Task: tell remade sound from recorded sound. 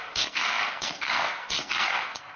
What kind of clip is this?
remade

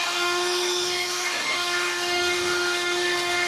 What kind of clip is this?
remade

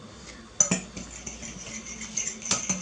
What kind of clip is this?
recorded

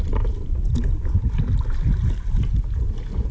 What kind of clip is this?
recorded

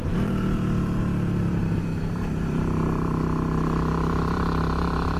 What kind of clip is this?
remade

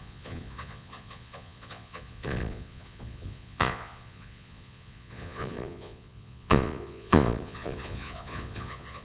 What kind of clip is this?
remade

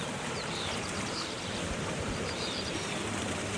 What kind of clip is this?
remade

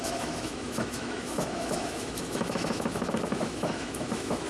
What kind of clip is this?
remade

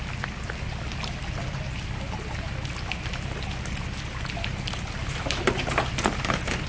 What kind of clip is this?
recorded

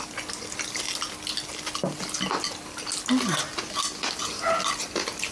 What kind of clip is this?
recorded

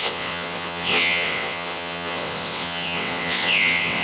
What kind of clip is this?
remade